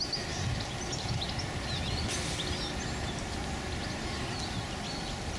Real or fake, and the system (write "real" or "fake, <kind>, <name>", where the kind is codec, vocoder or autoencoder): real